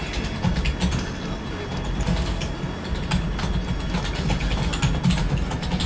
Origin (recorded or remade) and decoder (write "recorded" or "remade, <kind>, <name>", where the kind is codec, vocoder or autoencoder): recorded